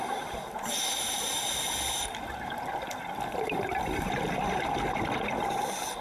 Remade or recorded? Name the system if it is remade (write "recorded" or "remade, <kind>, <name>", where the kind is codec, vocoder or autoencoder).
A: recorded